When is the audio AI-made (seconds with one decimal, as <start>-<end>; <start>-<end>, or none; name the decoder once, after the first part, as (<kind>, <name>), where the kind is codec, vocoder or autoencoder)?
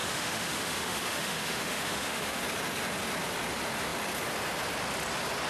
0.0-2.4 (autoencoder, DAC-VAE)